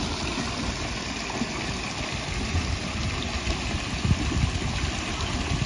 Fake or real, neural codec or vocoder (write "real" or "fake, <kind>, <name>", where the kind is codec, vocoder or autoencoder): real